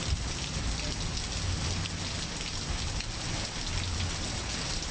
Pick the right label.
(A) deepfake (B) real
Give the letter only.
B